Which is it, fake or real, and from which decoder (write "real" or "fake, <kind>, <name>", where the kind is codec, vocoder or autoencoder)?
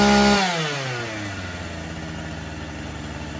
real